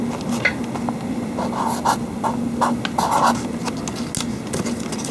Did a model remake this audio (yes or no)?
no